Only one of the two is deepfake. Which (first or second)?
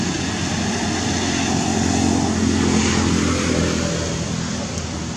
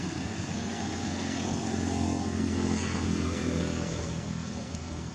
second